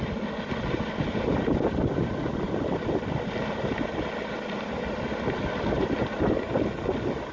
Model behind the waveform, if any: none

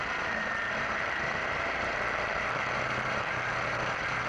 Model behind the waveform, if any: vocoder, BigVGAN v2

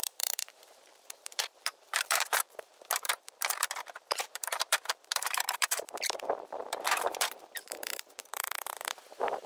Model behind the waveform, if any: vocoder, BigVGAN v2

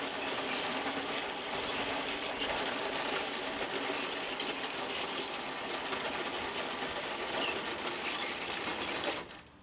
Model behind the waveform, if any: none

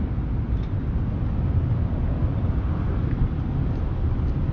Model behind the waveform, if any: none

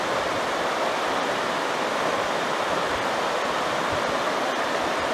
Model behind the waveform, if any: none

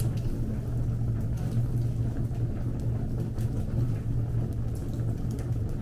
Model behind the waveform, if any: none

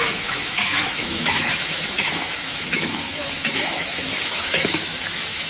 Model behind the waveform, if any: autoencoder, DAC-VAE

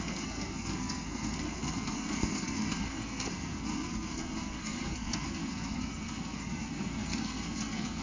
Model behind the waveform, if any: codec, SNAC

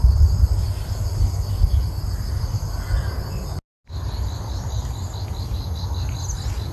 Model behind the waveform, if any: none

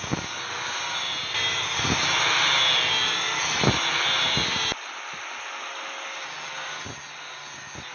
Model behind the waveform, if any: none